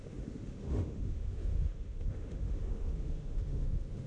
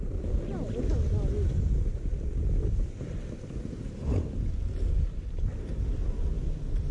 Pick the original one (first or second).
second